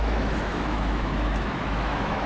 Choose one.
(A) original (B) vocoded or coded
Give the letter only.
B